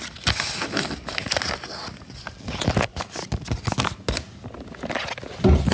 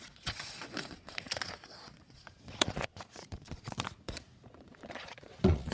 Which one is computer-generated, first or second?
second